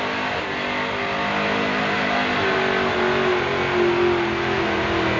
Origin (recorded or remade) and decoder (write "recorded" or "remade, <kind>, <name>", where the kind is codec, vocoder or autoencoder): recorded